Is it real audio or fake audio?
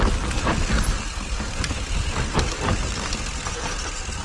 real